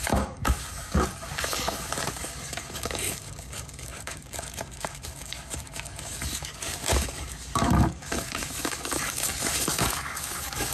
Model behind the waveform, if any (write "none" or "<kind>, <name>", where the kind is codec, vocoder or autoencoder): codec, DAC